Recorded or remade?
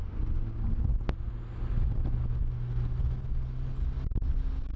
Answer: recorded